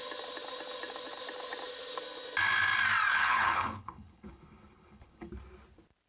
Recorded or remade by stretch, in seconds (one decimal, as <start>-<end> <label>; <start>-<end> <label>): 0.0-3.1 recorded; 3.1-5.3 remade; 5.3-6.1 recorded